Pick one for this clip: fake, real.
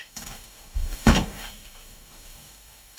fake